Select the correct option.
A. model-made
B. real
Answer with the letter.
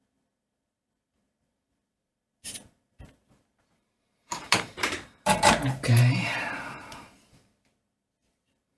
A